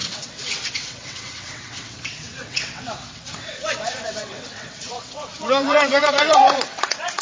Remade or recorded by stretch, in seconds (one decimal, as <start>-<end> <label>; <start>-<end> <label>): 0.0-7.2 remade